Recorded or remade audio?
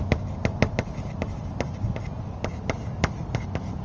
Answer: recorded